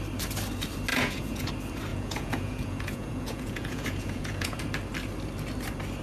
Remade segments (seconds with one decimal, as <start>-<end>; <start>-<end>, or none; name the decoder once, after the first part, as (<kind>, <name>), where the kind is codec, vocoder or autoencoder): 0.9-1.5 (vocoder, Vocos); 1.9-4.6